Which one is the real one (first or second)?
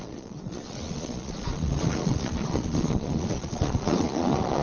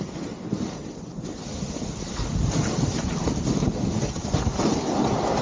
second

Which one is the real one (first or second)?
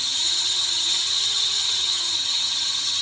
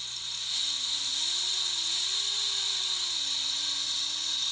second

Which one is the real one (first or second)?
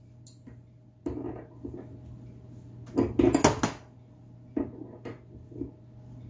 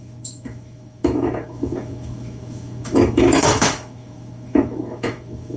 first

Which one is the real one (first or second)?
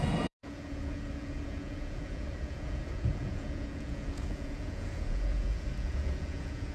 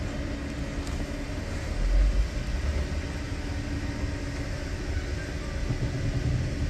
second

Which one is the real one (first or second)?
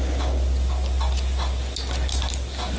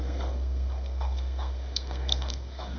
first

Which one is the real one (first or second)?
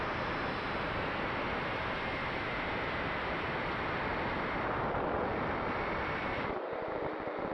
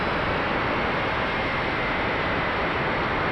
second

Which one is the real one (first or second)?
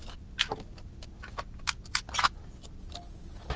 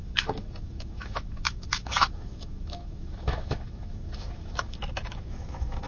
first